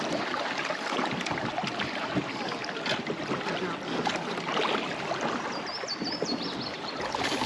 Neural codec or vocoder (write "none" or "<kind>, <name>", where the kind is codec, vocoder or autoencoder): none